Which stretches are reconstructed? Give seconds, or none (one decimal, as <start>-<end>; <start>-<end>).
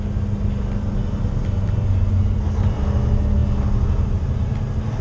none